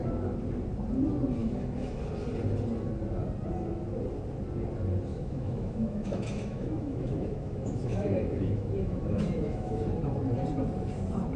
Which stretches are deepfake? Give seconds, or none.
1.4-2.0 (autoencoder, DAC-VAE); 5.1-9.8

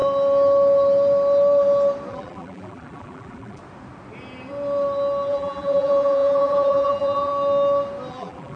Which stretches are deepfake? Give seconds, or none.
2.1-3.6 (vocoder, BigVGAN v2); 5.3-7.3; 8.1-8.6

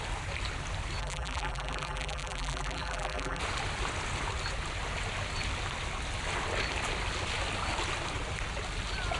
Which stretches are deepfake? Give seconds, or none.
1.0-3.4 (vocoder, BigVGAN v2)

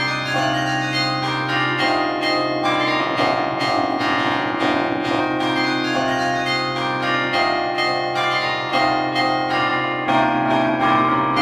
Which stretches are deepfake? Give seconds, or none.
3.0-5.2 (vocoder, Vocos)

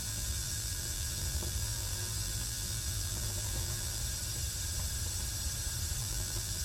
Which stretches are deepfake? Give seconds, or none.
0.0-4.0 (vocoder, BigVGAN v2); 6.0-6.6